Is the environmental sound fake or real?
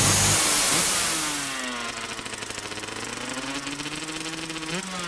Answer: real